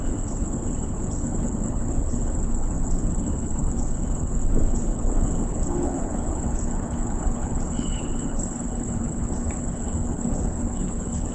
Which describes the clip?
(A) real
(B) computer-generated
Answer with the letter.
B